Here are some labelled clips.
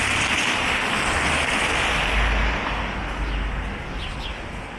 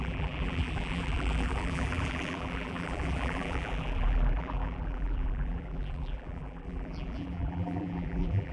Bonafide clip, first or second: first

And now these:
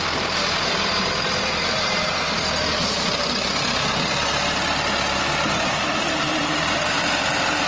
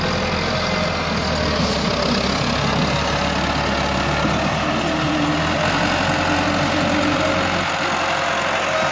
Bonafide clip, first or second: second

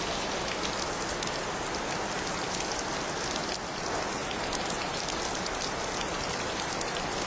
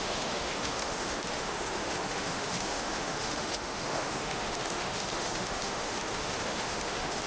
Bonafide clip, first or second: first